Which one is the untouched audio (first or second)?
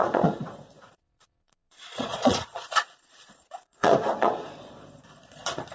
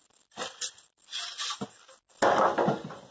second